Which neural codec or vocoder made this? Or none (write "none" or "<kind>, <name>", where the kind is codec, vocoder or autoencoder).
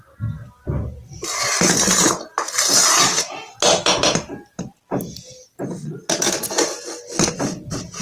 none